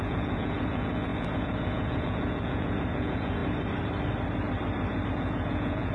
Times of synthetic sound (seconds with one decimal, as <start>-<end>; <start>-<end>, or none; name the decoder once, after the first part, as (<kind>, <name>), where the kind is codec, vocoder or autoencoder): 0.0-3.4 (vocoder, Vocos); 5.1-5.9